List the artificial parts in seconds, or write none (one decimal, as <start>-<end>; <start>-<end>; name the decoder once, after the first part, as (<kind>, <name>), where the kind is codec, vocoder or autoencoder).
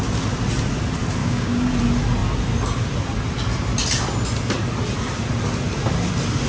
1.2-1.7 (codec, DAC)